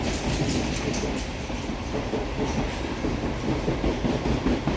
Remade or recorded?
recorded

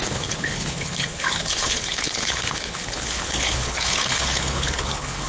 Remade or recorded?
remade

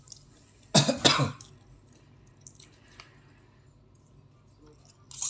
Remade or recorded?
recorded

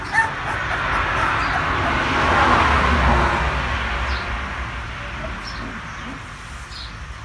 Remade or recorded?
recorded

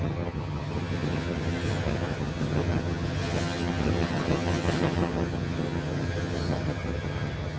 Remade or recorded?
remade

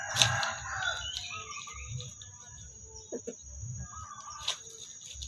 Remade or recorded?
recorded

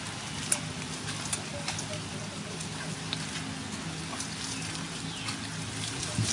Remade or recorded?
recorded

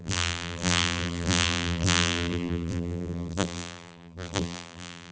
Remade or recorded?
remade